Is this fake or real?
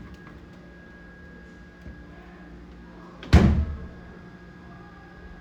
real